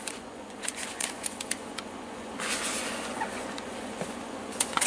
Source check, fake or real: fake